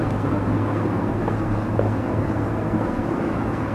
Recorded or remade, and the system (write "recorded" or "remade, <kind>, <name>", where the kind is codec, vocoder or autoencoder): remade, codec, SNAC